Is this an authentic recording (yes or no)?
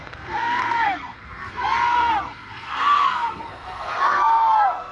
no